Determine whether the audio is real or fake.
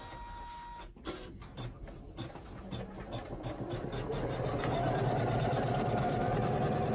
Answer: real